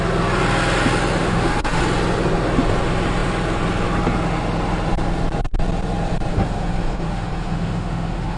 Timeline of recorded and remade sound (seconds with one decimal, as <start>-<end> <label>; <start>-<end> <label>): 0.0-1.2 recorded; 1.2-1.8 remade; 1.8-6.3 recorded; 6.3-8.4 remade